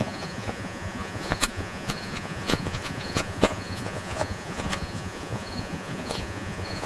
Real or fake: fake